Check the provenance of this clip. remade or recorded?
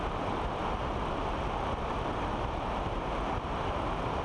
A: recorded